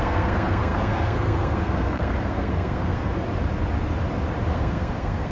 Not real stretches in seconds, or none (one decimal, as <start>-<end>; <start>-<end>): 0.0-3.1; 4.5-5.3